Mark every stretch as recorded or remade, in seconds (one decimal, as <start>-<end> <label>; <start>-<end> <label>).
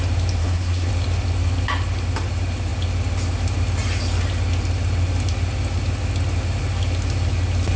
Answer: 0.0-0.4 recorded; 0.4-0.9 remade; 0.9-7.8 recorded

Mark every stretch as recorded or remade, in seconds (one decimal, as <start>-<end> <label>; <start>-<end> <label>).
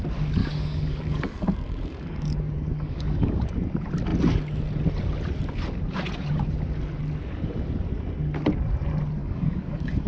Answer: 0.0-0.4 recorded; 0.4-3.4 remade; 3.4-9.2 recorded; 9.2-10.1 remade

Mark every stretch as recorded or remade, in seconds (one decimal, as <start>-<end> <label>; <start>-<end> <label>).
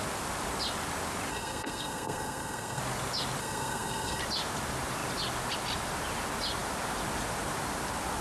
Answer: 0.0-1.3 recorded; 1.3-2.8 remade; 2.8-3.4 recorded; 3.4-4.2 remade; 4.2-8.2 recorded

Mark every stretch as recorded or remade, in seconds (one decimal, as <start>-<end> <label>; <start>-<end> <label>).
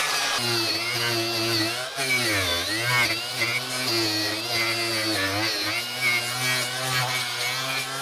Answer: 0.0-8.0 recorded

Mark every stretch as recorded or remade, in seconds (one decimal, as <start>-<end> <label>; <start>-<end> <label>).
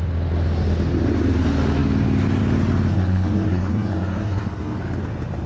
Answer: 0.0-2.9 recorded; 2.9-4.8 remade; 4.8-5.5 recorded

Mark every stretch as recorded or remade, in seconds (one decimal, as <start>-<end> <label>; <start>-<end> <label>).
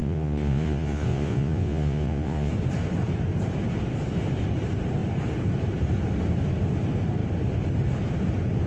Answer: 0.0-2.5 remade; 2.5-8.7 recorded